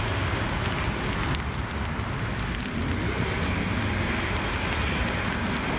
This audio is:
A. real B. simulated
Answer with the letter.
A